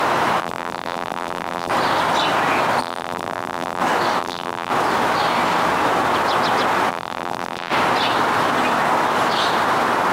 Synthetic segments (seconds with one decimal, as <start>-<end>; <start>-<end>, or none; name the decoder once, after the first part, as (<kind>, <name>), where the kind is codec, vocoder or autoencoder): 0.4-1.7 (vocoder, BigVGAN v2); 2.8-3.8; 4.2-4.7; 6.9-7.7